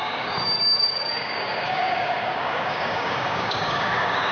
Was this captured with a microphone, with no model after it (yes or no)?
no